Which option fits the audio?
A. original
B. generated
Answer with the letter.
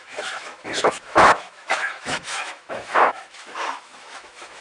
B